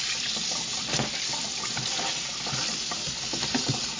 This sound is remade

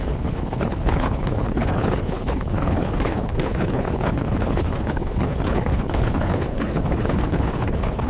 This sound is remade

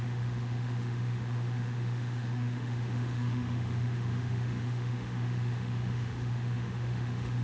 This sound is remade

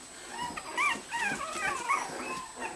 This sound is recorded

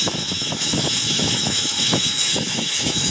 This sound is remade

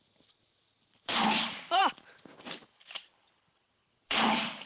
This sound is remade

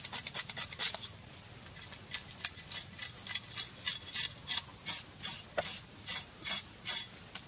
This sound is recorded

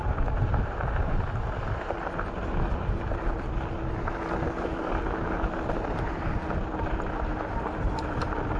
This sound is recorded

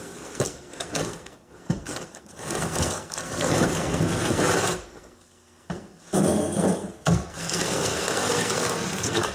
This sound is remade